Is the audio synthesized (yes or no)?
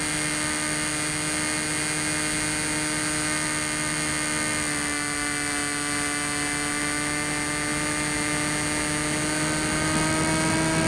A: no